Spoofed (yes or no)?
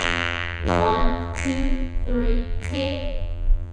yes